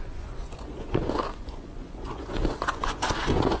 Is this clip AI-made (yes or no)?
yes